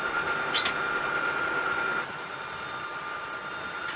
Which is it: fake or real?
real